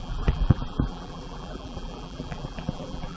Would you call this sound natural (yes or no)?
no